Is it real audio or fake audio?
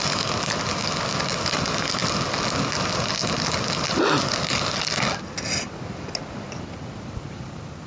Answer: real